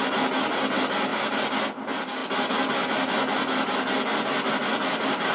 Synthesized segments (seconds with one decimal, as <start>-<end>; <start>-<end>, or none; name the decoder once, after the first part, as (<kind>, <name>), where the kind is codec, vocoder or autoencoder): none